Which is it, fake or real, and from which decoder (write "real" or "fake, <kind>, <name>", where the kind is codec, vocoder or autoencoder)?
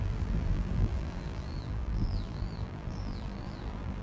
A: fake, vocoder, BigVGAN v2